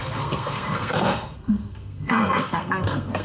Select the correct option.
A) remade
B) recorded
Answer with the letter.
A